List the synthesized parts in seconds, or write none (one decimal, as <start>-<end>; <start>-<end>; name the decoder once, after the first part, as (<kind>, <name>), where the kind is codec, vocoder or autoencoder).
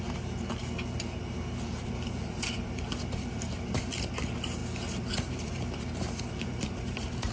0.0-0.6 (vocoder, BigVGAN v2); 1.2-4.6; 5.3-7.3